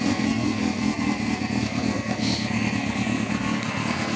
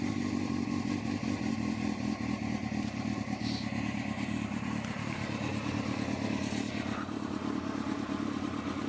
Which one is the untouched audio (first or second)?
second